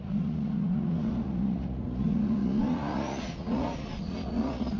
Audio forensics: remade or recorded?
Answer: remade